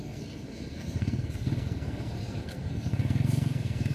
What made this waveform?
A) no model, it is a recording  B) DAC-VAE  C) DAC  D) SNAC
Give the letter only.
D